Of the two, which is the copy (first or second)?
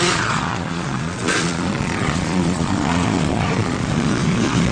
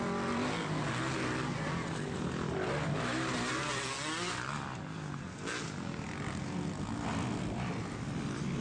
first